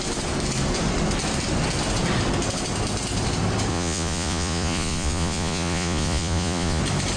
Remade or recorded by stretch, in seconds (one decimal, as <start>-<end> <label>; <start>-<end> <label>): 0.0-3.7 recorded; 3.7-6.8 remade; 6.8-7.2 recorded